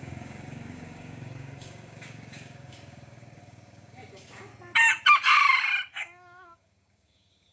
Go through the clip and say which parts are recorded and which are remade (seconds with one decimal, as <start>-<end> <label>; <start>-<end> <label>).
0.0-4.5 remade; 4.5-5.9 recorded; 5.9-7.5 remade